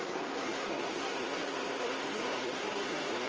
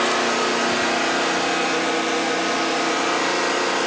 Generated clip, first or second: first